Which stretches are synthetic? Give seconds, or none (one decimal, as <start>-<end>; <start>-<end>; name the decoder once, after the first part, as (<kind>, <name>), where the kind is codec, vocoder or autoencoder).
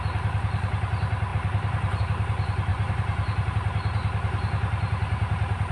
1.3-2.0 (vocoder, BigVGAN v2); 2.7-3.5